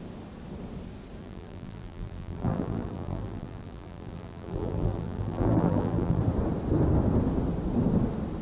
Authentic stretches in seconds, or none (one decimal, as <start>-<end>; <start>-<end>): 0.0-1.2; 6.2-8.4